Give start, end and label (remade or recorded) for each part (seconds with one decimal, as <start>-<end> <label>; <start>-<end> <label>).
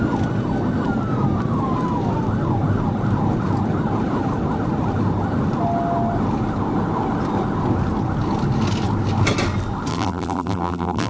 0.0-9.9 recorded; 9.9-11.1 remade